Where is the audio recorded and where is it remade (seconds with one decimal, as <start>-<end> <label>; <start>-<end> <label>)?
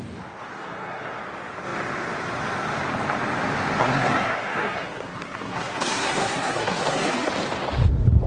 0.0-0.6 recorded; 0.6-1.2 remade; 1.2-3.8 recorded; 3.8-7.3 remade; 7.3-8.3 recorded